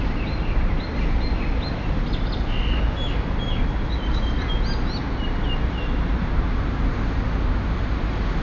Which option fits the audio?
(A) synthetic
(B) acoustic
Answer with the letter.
B